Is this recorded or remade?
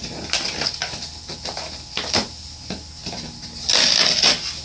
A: recorded